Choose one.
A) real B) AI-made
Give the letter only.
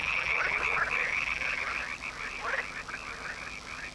A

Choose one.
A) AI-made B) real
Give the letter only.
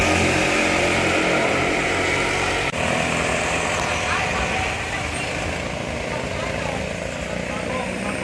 B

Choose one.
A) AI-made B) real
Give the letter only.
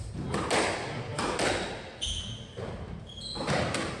B